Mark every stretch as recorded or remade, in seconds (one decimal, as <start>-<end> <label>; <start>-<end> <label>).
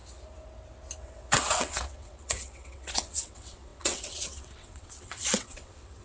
0.0-1.0 recorded; 1.0-6.0 remade